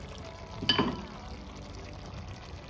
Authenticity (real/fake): real